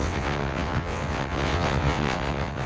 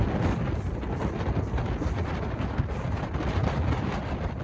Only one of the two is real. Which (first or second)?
second